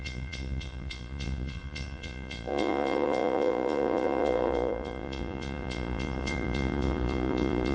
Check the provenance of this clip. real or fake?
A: fake